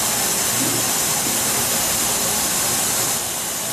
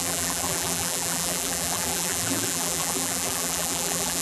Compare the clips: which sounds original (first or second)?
first